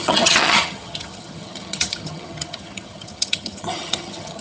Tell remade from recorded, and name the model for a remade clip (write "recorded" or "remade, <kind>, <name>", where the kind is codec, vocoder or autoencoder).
remade, vocoder, HiFi-GAN